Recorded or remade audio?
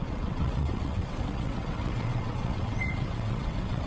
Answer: remade